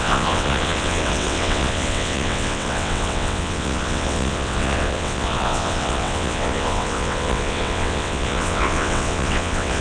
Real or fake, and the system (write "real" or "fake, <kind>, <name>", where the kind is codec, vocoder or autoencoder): fake, vocoder, WaveNeXt